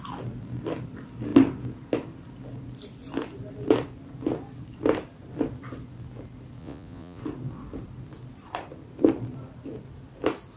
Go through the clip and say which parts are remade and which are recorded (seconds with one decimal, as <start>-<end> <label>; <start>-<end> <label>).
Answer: 0.0-6.6 recorded; 6.6-7.2 remade; 7.2-10.6 recorded